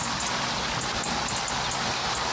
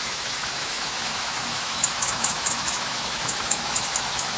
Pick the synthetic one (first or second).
second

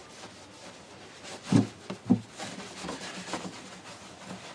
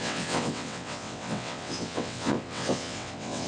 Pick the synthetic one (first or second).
second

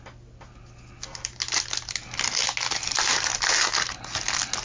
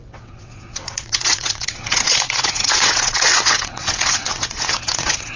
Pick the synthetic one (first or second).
second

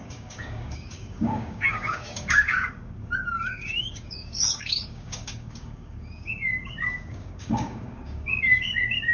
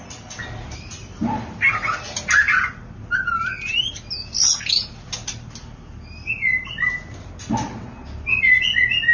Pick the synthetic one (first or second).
first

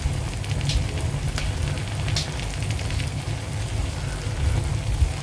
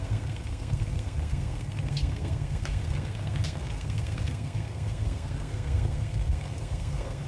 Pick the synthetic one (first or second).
second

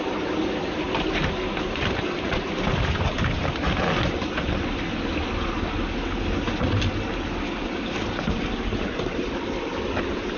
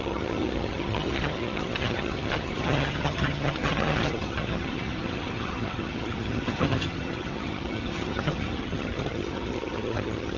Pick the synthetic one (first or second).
second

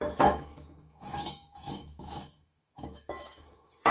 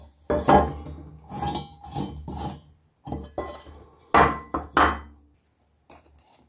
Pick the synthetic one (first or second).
first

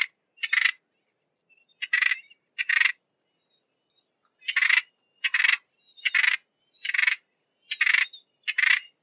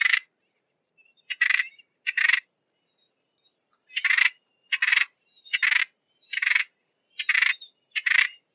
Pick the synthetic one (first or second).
second